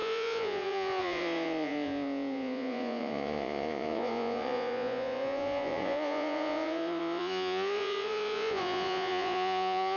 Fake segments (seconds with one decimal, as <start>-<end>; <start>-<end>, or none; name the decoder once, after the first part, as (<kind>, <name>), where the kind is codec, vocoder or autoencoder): 0.0-10.0 (vocoder, Vocos)